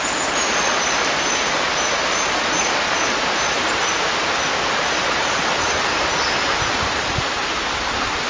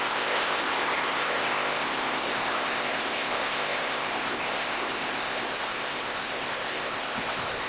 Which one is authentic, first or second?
first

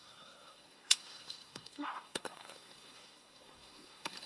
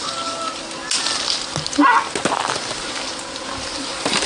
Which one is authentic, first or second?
second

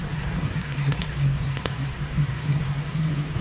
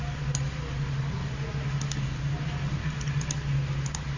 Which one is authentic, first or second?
second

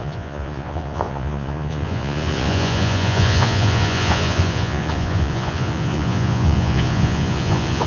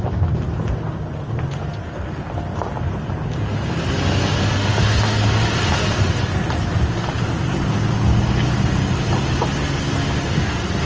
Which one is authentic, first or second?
second